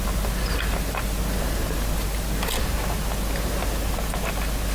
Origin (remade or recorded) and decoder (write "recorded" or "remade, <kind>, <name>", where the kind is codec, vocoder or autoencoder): recorded